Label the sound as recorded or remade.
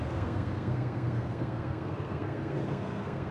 remade